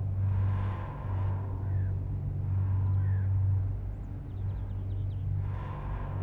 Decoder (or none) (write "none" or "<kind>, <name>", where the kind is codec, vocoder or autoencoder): none